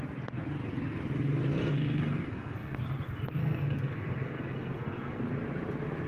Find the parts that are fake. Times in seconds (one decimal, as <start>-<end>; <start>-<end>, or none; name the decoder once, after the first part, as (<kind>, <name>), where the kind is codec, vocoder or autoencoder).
1.6-2.8 (codec, SNAC); 3.4-5.2